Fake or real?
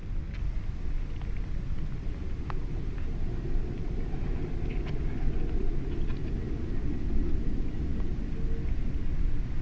real